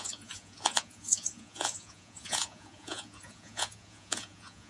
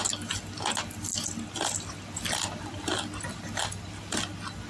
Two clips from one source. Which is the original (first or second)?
second